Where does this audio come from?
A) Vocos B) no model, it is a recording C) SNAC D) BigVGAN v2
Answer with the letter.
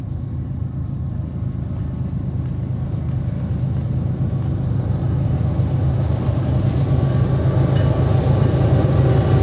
B